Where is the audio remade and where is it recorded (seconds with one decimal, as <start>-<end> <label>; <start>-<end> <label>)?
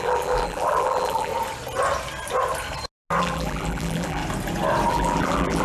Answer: 0.0-1.3 remade; 1.3-3.2 recorded; 3.2-4.2 remade; 4.2-4.9 recorded; 4.9-5.6 remade